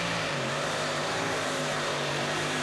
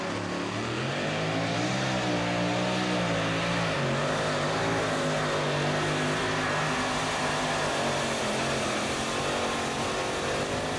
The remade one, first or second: first